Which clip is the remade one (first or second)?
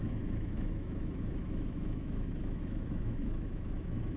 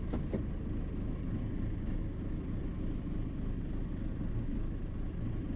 first